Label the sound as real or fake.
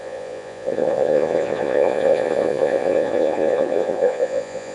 fake